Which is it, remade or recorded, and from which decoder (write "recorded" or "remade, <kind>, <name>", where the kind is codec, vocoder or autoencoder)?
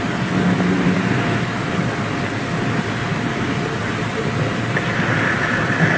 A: recorded